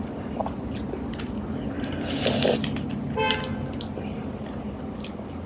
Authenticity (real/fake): real